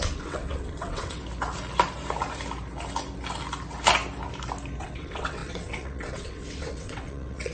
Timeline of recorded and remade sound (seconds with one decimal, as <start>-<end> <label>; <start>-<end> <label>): 0.0-1.2 remade; 1.2-4.8 recorded; 4.8-7.5 remade